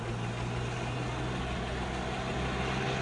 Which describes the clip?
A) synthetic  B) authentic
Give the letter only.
B